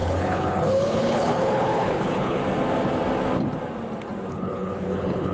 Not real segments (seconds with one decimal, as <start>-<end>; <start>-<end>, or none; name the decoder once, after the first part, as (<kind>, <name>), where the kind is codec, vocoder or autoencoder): 0.0-2.4 (codec, HILCodec); 4.3-5.3